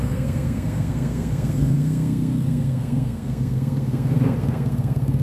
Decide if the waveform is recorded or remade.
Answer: remade